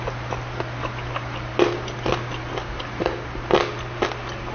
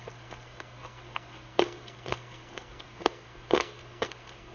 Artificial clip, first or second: second